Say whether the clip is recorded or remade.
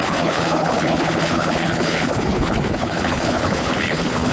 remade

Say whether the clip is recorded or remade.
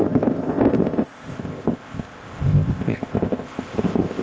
remade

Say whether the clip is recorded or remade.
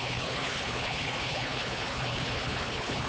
remade